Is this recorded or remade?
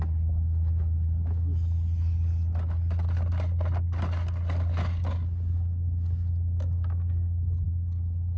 recorded